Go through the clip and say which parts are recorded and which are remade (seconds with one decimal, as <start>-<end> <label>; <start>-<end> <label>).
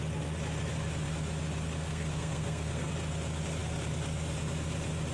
0.0-1.9 recorded; 1.9-2.9 remade; 2.9-5.1 recorded